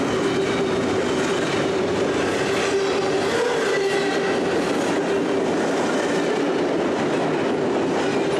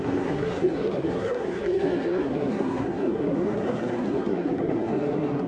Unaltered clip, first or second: first